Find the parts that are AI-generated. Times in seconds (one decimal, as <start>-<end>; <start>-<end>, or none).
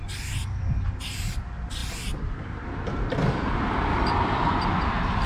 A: 3.2-4.5